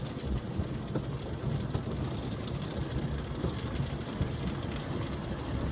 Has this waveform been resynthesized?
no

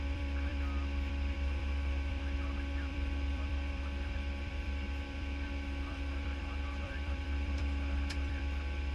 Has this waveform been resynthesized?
yes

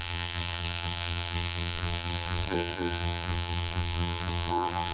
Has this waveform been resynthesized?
yes